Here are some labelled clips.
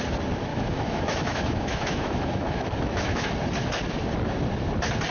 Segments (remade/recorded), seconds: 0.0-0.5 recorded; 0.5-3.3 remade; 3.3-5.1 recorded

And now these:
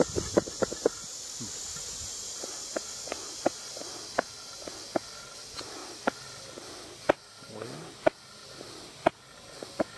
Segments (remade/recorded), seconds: 0.0-10.0 recorded

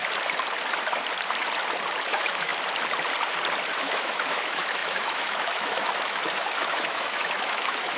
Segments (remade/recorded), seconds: 0.0-2.1 recorded; 2.1-2.5 remade; 2.5-3.7 recorded; 3.7-8.0 remade

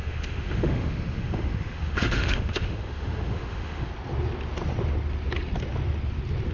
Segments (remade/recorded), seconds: 0.0-3.9 remade; 3.9-6.5 recorded

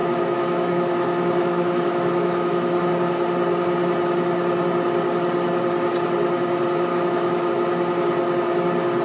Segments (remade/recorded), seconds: 0.0-2.9 remade; 2.9-6.9 recorded; 6.9-7.5 remade; 7.5-9.0 recorded